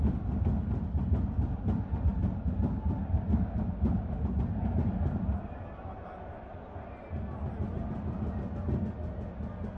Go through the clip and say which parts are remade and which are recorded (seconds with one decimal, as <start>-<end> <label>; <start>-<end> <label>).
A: 0.0-9.8 recorded